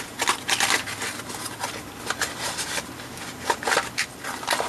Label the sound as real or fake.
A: real